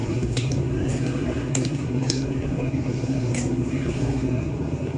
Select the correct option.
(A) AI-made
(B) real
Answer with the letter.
A